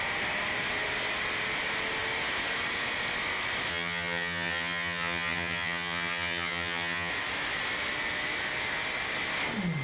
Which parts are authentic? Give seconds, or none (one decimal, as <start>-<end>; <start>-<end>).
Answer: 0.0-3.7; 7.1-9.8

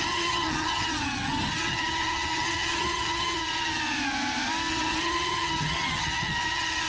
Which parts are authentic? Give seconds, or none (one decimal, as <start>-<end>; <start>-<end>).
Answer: 3.8-4.7

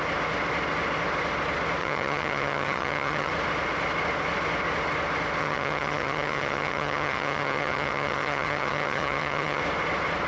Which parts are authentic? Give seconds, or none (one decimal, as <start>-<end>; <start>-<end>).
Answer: 0.0-1.8; 3.3-5.4; 9.6-10.3